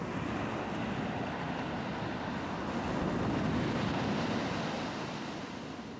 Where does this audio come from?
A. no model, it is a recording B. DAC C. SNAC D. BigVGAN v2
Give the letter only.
A